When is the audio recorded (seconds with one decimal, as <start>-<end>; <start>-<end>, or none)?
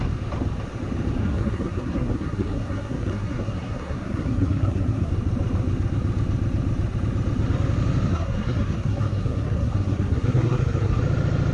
0.0-1.2; 5.1-8.1; 11.0-11.5